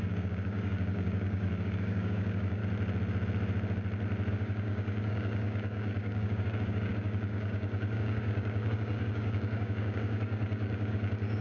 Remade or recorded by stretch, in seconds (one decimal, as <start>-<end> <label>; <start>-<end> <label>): 0.0-2.6 remade; 2.6-4.3 recorded; 4.3-11.4 remade